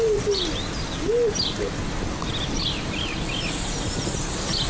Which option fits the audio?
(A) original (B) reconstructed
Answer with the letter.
A